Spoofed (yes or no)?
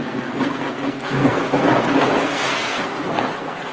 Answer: yes